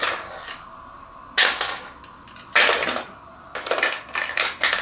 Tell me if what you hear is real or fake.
real